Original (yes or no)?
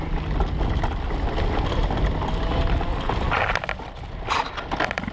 yes